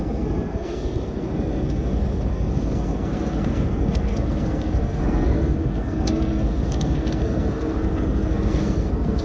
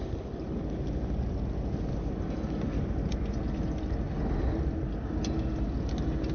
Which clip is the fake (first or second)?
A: first